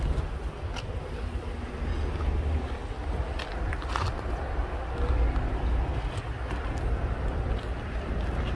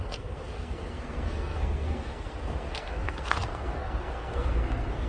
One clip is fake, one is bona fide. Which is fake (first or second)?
second